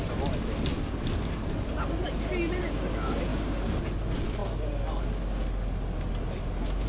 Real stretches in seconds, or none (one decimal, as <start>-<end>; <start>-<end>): 0.0-3.3; 3.8-6.9